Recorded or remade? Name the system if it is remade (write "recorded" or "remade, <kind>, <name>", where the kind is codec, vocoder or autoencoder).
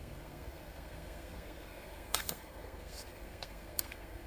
remade, codec, SNAC